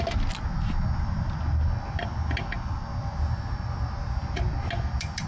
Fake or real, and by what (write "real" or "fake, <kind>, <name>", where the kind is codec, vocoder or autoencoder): real